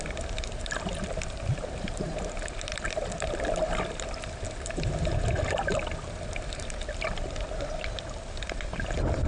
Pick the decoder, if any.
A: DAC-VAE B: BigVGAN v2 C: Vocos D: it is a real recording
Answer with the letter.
B